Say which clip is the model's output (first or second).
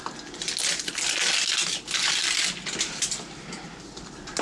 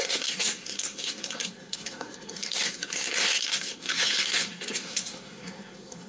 second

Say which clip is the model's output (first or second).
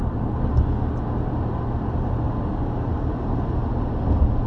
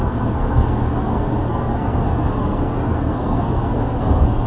second